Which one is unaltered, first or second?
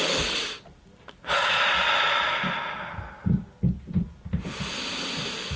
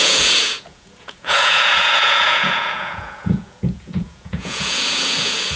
first